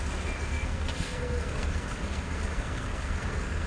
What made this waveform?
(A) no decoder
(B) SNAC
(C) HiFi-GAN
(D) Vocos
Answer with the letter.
B